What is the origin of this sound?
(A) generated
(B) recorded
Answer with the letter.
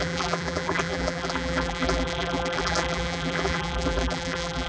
A